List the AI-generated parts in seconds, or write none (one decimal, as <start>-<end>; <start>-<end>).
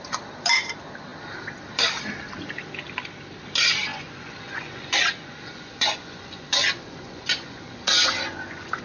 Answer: 3.9-8.8